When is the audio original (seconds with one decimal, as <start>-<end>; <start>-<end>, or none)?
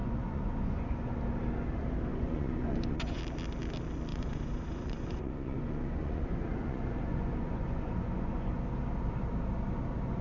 1.2-2.1; 3.2-4.1; 8.6-10.2